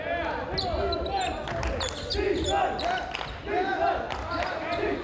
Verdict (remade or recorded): recorded